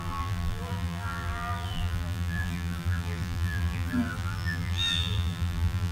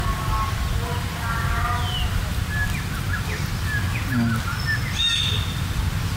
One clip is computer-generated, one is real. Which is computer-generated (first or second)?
first